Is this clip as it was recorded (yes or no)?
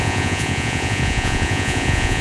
no